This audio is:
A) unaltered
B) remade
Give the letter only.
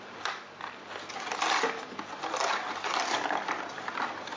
A